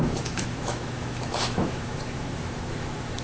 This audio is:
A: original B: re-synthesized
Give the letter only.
B